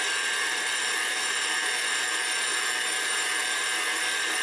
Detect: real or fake fake